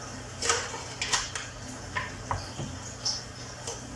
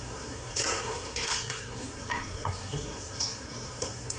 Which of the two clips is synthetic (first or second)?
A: second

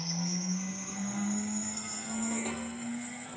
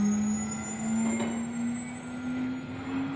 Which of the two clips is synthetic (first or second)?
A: first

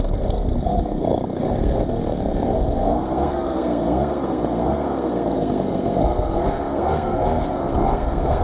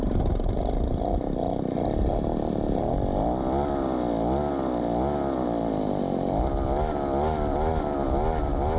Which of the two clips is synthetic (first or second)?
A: first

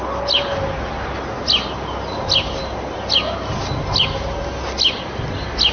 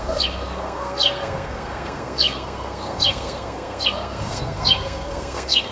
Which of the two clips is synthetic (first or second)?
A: second